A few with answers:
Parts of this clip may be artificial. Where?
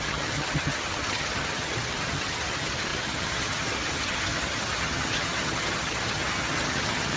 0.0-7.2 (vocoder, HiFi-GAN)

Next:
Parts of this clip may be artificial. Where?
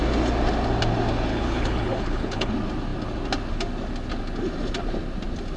1.3-2.5 (codec, HILCodec)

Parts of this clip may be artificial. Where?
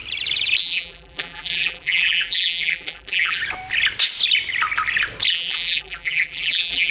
0.6-3.4 (vocoder, BigVGAN v2); 5.3-6.9